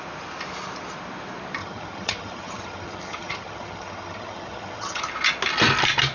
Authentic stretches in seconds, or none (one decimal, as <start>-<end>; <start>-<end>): 0.0-1.6; 5.0-6.1

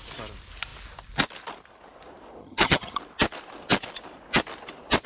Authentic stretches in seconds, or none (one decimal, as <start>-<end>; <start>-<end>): 0.0-2.4; 3.0-5.1

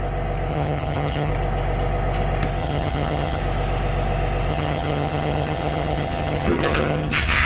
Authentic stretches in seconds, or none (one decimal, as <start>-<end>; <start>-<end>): 0.0-0.5; 1.3-2.6; 3.4-4.5

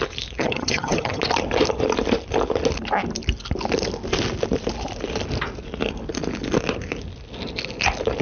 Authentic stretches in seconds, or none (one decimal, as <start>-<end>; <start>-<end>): 0.0-0.4; 1.2-8.2